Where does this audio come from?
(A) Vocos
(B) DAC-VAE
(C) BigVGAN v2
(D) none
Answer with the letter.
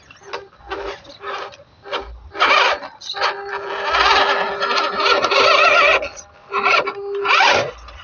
D